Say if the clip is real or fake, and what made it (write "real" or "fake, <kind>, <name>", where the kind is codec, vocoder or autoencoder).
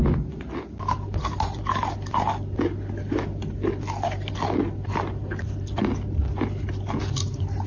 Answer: real